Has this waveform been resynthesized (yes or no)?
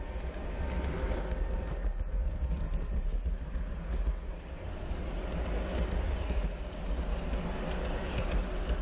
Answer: no